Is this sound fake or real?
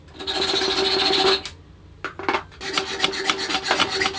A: real